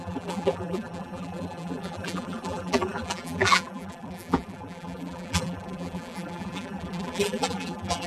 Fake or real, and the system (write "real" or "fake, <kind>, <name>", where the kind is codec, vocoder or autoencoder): fake, vocoder, BigVGAN v2